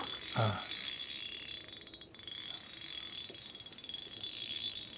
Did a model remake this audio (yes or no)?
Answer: no